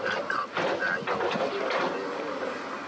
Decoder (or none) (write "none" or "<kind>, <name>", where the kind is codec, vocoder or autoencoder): none